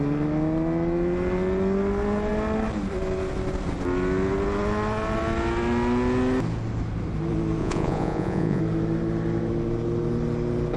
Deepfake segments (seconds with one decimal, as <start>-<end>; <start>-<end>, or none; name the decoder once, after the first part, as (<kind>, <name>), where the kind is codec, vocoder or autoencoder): 7.6-8.6 (vocoder, Vocos)